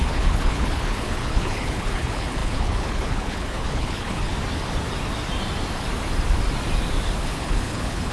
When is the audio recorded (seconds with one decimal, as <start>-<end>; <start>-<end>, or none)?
4.3-7.2